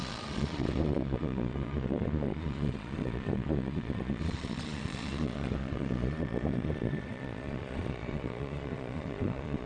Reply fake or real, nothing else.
fake